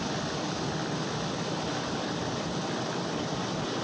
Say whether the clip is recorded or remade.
recorded